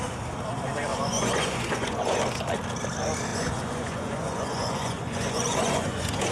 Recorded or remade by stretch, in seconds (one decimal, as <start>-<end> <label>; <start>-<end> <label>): 0.0-0.9 recorded; 0.9-2.2 remade; 2.2-3.3 recorded; 3.3-6.3 remade